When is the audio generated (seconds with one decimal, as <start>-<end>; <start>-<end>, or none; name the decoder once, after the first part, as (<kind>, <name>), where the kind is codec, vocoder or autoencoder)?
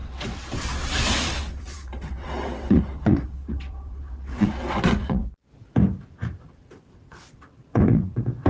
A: 0.0-5.2 (vocoder, WaveNeXt); 6.4-8.5